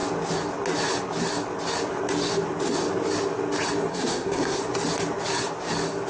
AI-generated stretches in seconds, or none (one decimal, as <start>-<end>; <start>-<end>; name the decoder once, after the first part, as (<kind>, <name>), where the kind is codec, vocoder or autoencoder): 3.9-4.6 (codec, SNAC)